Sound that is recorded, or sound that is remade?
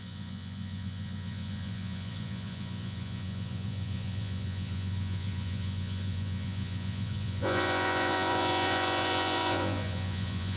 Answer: remade